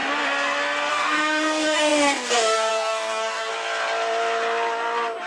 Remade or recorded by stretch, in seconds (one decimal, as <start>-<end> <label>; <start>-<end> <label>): 0.0-0.9 recorded; 0.9-3.5 remade; 3.5-5.3 recorded